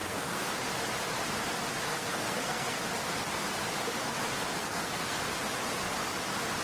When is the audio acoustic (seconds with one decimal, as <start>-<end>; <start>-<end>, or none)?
0.5-1.9; 2.8-4.6; 5.3-6.6